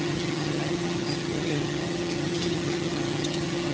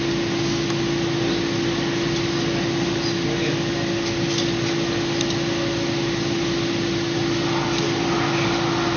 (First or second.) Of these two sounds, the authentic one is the second